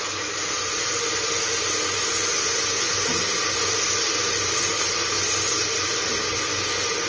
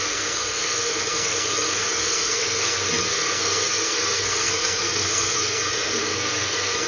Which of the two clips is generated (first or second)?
second